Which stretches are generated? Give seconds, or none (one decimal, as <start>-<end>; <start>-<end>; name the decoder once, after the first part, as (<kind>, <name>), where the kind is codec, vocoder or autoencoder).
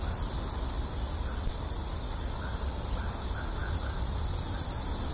none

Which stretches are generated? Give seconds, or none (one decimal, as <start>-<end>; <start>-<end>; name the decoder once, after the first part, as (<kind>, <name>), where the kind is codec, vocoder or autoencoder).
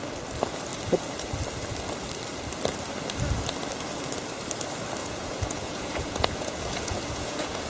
5.0-7.7 (vocoder, Vocos)